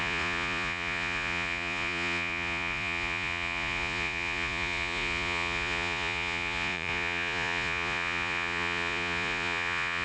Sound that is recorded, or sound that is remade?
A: remade